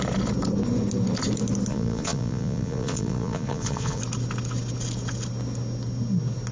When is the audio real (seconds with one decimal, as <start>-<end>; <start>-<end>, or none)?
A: 0.0-1.7; 4.0-6.5